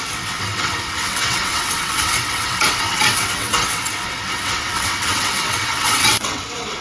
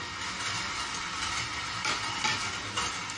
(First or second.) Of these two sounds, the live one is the second